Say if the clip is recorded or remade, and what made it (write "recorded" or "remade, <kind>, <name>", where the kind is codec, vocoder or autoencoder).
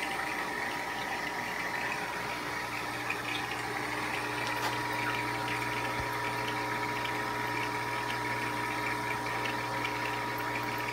recorded